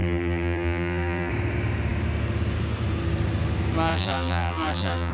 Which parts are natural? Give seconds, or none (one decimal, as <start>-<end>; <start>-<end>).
1.3-3.9